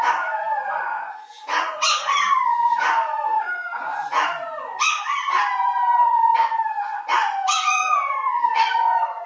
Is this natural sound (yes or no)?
no